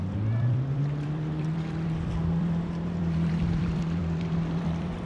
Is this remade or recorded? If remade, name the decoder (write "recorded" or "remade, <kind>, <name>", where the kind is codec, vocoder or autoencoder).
remade, vocoder, BigVGAN v2